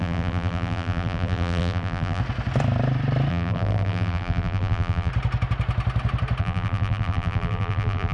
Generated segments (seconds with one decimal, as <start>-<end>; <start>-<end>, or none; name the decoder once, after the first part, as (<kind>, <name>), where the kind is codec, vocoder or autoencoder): 0.0-2.2 (vocoder, BigVGAN v2); 3.3-5.1; 6.4-8.1